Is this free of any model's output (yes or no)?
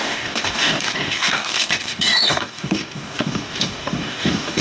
no